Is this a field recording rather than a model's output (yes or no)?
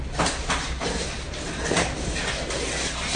yes